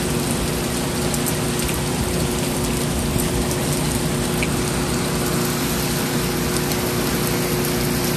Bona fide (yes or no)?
yes